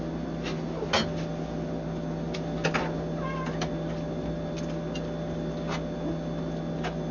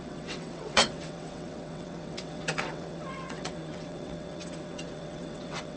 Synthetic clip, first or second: second